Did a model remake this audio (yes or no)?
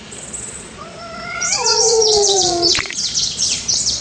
yes